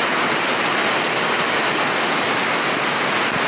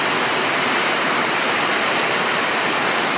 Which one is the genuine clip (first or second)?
first